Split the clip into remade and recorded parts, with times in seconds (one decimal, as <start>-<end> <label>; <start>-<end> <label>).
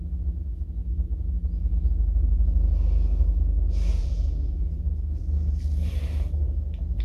0.0-4.0 recorded; 4.0-4.8 remade; 4.8-7.0 recorded